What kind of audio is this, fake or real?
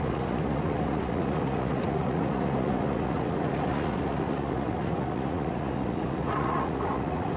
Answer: fake